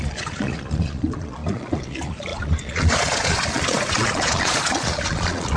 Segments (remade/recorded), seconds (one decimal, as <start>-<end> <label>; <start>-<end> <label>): 0.0-5.6 remade